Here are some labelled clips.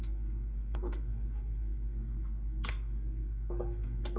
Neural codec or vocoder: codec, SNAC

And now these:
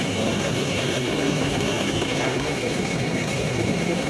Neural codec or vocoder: codec, SNAC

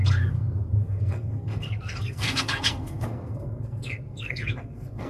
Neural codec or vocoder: codec, SNAC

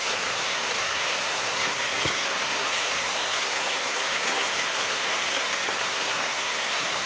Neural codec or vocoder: codec, SNAC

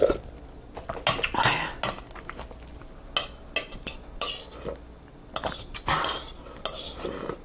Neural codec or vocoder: none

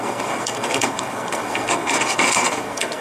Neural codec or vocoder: codec, SNAC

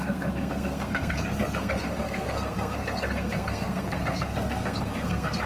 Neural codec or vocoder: codec, SNAC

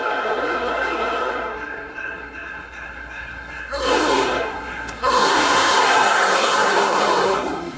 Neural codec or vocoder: codec, SNAC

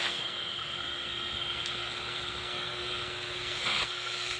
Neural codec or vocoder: codec, SNAC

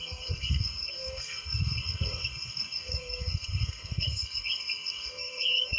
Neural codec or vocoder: codec, SNAC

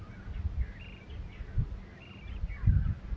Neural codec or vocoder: none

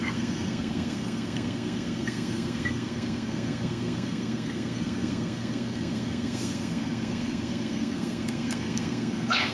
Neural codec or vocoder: codec, SNAC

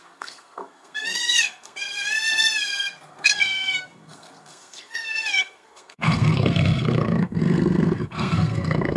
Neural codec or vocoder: codec, SNAC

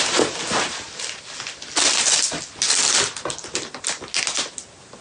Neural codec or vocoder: none